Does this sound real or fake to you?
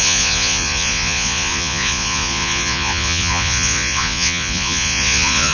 fake